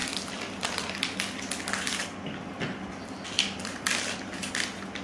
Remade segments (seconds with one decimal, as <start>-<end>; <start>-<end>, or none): none